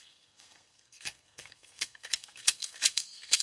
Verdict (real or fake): fake